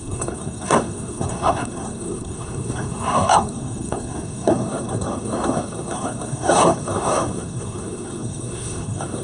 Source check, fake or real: fake